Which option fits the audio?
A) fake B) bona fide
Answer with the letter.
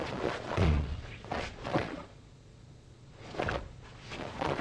A